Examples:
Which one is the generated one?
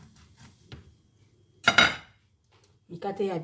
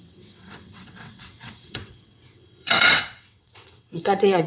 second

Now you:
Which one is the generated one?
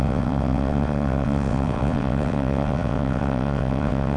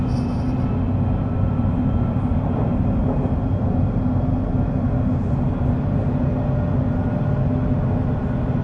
first